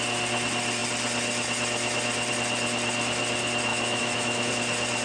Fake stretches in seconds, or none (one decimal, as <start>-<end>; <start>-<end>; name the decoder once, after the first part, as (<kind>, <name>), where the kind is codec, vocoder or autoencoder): 3.7-4.5 (autoencoder, DAC-VAE)